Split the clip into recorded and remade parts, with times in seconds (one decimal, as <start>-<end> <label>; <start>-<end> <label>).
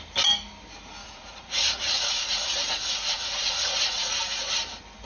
0.0-1.0 recorded; 1.0-4.1 remade; 4.1-5.1 recorded